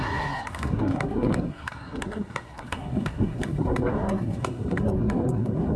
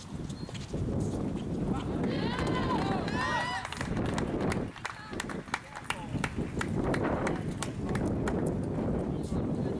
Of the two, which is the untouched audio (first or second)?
second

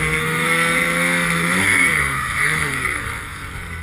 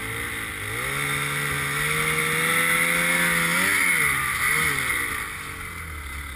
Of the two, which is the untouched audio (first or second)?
second